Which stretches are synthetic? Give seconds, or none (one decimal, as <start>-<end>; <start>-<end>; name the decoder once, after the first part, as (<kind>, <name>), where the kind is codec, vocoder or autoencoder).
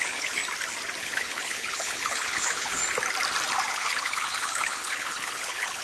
0.0-0.4 (codec, HILCodec); 1.0-2.8; 3.7-5.8